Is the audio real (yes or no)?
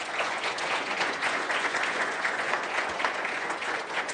no